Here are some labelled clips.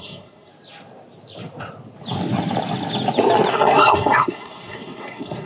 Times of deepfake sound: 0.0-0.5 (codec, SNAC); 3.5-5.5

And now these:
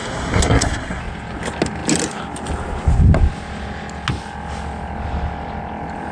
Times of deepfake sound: 0.0-1.0 (codec, SNAC)

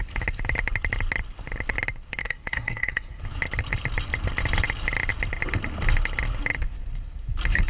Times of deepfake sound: 2.2-3.2 (codec, SNAC)

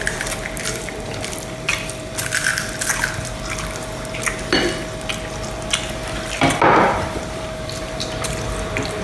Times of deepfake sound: 0.0-2.5 (vocoder, BigVGAN v2); 6.7-9.0

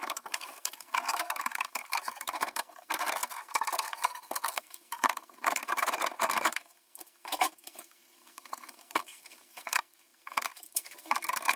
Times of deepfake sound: 0.0-11.6 (codec, SNAC)

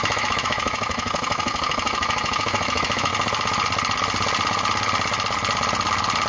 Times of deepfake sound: 0.0-3.1 (autoencoder, DAC-VAE)